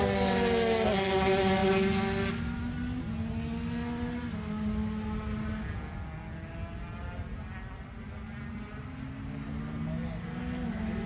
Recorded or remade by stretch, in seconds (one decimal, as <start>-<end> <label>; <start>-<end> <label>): 0.0-11.1 recorded